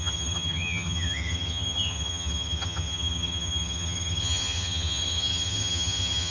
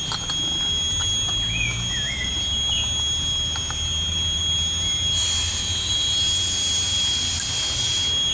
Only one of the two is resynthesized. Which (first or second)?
first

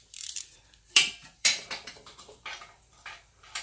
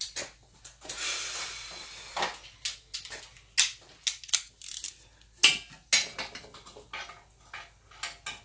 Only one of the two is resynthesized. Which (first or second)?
first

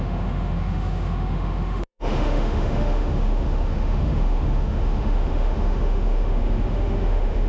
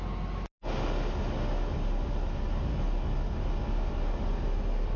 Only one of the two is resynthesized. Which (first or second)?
first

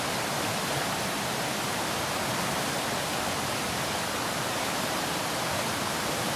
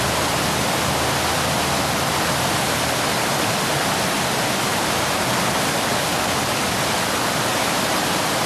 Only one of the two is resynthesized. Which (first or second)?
first